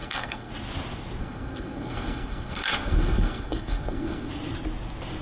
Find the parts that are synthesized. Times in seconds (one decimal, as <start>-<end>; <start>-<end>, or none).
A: 0.0-0.5; 1.2-4.3